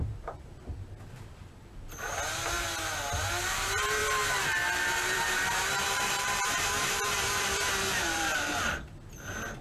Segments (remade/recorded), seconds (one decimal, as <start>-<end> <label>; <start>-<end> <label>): 0.0-0.7 remade; 0.7-3.4 recorded; 3.4-4.0 remade; 4.0-4.8 recorded; 4.8-9.6 remade